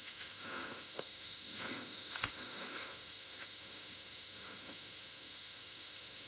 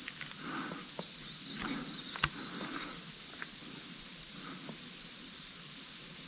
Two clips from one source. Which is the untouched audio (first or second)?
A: second